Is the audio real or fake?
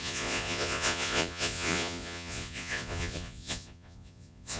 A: fake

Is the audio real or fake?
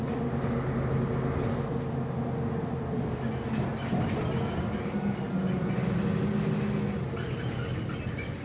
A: real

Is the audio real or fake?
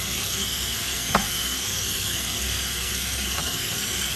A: fake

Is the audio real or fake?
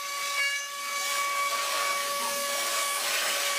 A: fake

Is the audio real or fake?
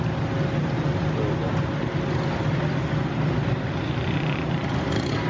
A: real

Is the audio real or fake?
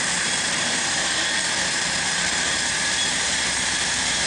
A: fake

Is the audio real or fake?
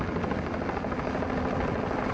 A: real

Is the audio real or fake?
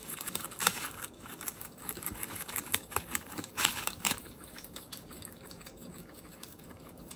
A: fake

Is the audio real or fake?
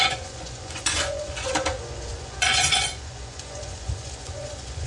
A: fake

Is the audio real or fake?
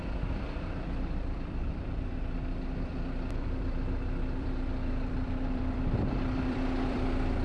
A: fake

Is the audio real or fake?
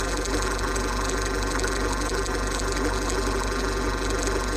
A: fake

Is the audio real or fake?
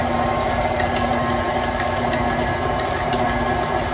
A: real